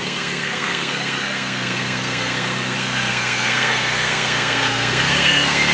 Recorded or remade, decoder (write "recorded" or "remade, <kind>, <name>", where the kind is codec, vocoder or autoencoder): remade, codec, SNAC